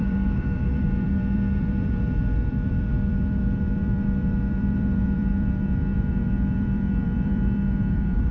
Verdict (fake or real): fake